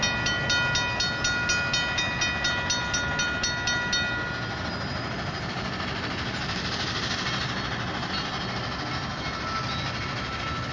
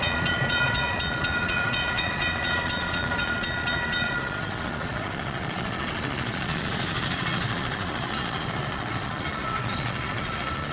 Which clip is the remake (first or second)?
second